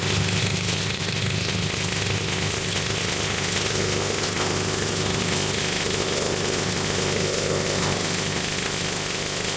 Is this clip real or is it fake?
fake